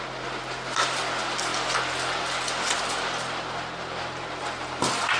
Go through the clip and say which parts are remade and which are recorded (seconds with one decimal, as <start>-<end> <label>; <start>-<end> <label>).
0.0-5.2 recorded